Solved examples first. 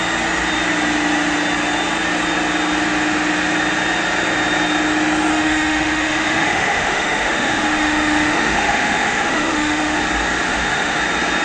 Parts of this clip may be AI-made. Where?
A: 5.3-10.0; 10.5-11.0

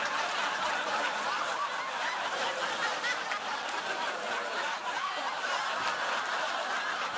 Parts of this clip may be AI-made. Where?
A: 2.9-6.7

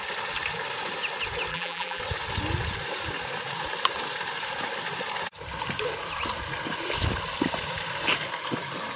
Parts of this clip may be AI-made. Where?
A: 1.5-2.0

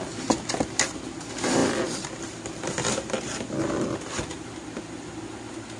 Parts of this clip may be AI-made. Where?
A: 1.6-5.1

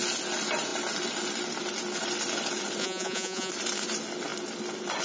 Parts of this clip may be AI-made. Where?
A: 2.8-3.5

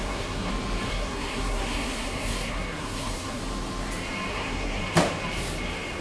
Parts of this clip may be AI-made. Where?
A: 0.0-0.5; 0.9-3.4; 4.3-4.8

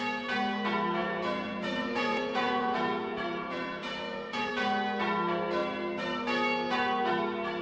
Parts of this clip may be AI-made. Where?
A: 1.0-4.5